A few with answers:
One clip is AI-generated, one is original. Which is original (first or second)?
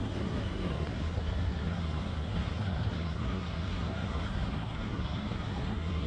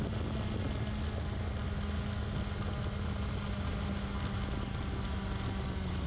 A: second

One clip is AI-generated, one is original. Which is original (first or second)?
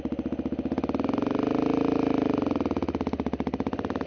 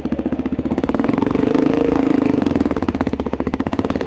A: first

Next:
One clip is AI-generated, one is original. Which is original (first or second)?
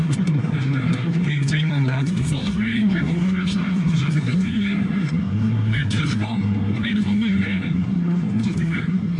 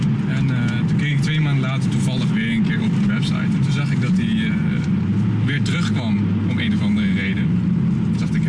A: second